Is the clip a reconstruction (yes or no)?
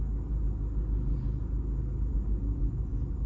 no